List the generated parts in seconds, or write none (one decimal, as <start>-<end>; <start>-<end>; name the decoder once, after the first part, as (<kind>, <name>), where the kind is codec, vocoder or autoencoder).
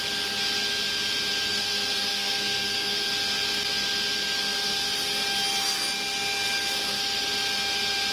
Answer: 1.5-3.1 (codec, SNAC)